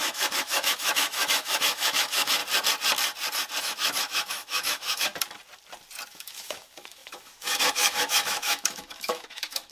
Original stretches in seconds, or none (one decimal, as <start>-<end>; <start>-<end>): 2.4-3.6; 5.1-6.1